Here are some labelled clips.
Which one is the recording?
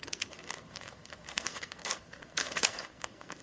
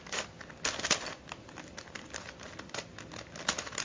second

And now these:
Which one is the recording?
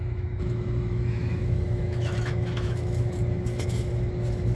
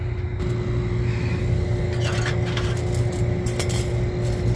second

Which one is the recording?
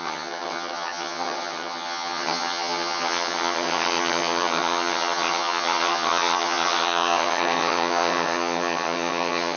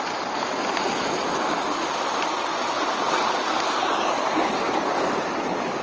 second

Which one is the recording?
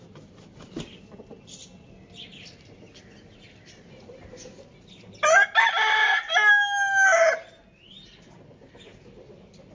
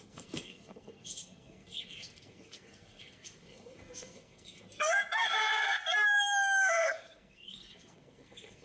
first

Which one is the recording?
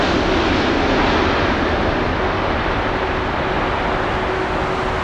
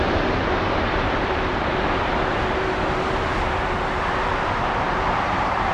first